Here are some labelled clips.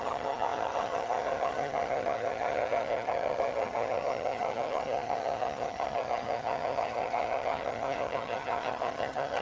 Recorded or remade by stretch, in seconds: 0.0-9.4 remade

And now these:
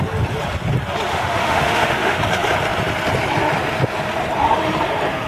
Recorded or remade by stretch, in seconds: 0.0-1.1 recorded; 1.1-2.2 remade; 2.2-5.3 recorded

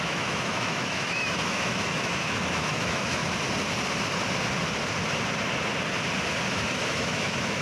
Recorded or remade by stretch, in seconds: 0.0-3.2 remade; 3.2-6.5 recorded; 6.5-7.6 remade

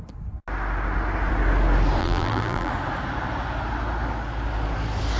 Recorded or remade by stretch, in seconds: 0.0-2.0 recorded; 2.0-2.7 remade; 2.7-5.2 recorded

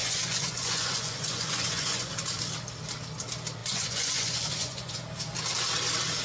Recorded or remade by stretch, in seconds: 0.0-2.1 remade; 2.1-3.6 recorded; 3.6-5.0 remade; 5.0-6.2 recorded